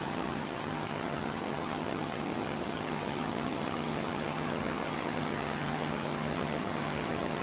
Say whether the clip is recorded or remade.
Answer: remade